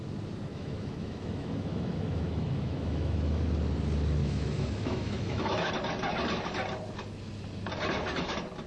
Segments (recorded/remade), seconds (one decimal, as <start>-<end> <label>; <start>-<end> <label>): 0.0-0.5 recorded; 0.5-3.4 remade; 3.4-4.2 recorded; 4.2-5.7 remade; 5.7-8.7 recorded